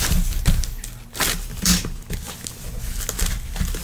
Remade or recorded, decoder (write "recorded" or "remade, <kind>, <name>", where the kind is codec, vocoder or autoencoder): recorded